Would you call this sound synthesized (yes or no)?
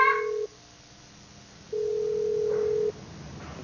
no